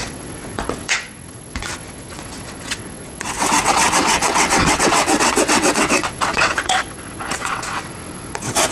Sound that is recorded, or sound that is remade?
remade